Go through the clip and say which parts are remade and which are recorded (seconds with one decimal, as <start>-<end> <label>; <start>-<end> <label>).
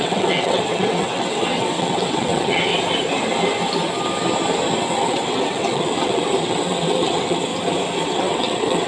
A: 0.0-2.7 remade; 2.7-4.8 recorded; 4.8-7.5 remade; 7.5-8.0 recorded; 8.0-8.9 remade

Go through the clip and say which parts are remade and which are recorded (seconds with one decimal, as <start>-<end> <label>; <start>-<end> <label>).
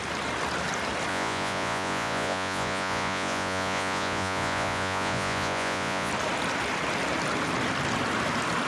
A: 0.0-1.1 recorded; 1.1-6.1 remade; 6.1-8.7 recorded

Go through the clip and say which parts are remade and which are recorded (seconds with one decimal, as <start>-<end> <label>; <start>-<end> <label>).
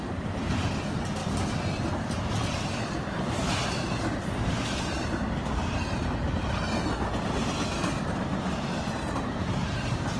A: 0.0-10.2 recorded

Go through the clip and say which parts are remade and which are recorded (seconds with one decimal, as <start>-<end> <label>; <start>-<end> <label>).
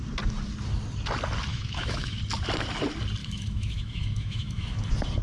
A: 0.0-1.5 recorded; 1.5-2.2 remade; 2.2-3.2 recorded; 3.2-4.8 remade; 4.8-5.2 recorded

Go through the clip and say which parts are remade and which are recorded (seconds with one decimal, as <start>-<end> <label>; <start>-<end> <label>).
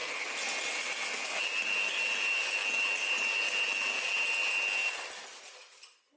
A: 0.0-6.2 recorded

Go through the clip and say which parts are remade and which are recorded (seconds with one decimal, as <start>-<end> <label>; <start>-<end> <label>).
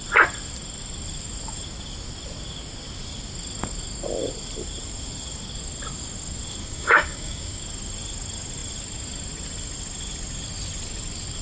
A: 0.0-6.6 recorded; 6.6-7.6 remade; 7.6-11.4 recorded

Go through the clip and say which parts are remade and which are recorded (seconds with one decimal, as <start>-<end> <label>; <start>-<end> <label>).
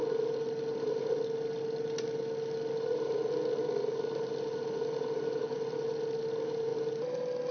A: 0.0-7.5 recorded